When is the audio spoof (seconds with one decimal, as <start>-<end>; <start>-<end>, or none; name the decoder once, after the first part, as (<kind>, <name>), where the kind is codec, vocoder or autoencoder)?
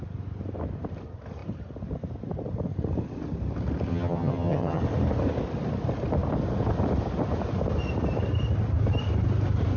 3.9-4.8 (vocoder, HiFi-GAN)